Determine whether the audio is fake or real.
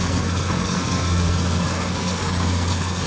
fake